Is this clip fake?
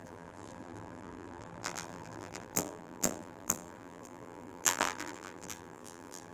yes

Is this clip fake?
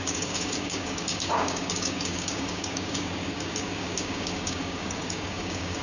yes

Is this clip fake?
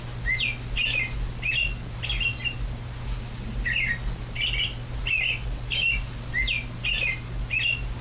no